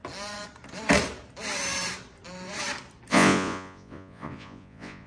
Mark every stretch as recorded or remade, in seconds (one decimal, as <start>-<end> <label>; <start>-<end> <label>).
0.0-3.1 recorded; 3.1-5.1 remade